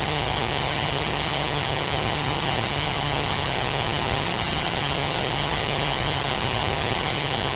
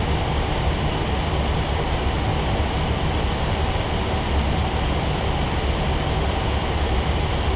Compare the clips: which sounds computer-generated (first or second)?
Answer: first